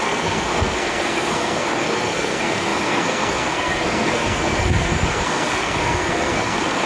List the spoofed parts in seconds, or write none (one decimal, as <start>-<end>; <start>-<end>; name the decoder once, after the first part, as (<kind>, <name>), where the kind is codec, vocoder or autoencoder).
0.0-6.9 (codec, SNAC)